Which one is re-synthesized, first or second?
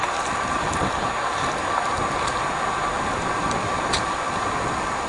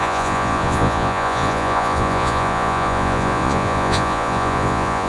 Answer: second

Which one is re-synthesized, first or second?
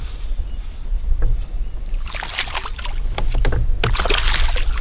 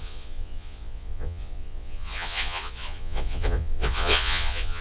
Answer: second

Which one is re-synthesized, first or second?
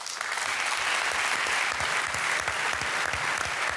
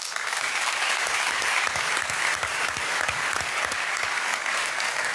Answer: second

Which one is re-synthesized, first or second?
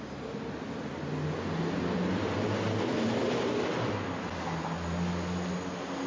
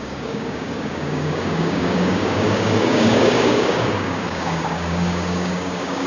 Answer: second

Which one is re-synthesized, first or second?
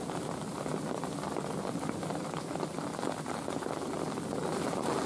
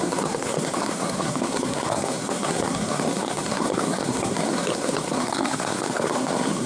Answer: second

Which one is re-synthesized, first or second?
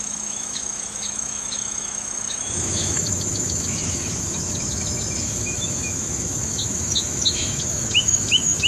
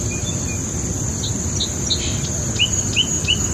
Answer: first